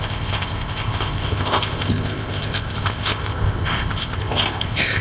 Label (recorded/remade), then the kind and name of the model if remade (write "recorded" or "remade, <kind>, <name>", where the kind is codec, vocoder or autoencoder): remade, codec, ZipCodec